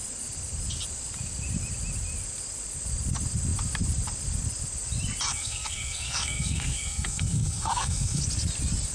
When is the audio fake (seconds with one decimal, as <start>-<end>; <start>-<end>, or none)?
5.3-8.2